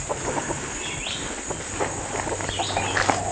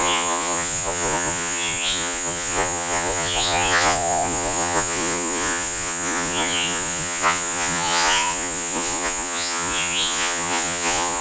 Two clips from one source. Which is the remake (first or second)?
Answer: second